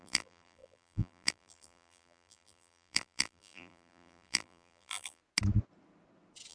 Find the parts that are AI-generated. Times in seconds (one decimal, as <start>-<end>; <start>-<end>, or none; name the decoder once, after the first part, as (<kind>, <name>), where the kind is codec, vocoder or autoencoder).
0.0-5.2 (vocoder, BigVGAN v2)